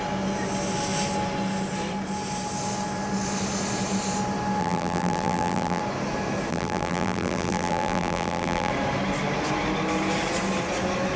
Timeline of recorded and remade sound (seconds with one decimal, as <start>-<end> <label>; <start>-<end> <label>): 0.0-4.6 recorded; 4.6-5.8 remade; 5.8-6.5 recorded; 6.5-8.7 remade; 8.7-11.2 recorded